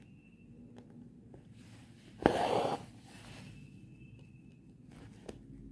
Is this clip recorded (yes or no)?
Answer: yes